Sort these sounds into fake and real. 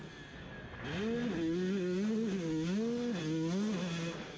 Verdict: real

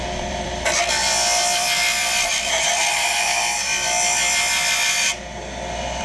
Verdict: fake